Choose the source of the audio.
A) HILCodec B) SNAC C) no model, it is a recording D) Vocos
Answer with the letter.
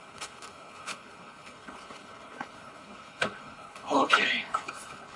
A